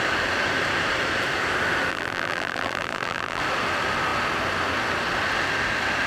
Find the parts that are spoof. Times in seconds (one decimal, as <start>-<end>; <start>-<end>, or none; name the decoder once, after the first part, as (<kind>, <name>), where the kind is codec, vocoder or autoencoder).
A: 1.9-3.4 (vocoder, BigVGAN v2)